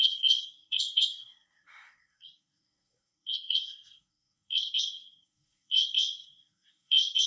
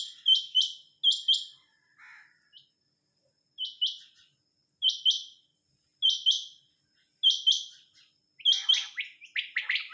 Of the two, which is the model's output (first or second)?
first